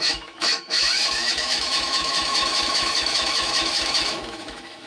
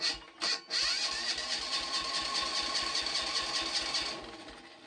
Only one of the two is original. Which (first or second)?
second